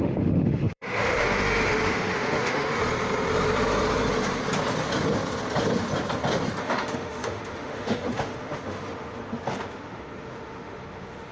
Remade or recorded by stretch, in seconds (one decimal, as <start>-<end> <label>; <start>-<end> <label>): 0.0-2.8 remade; 2.8-6.6 recorded; 6.6-11.3 remade